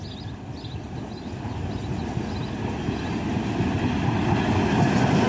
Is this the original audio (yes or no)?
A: yes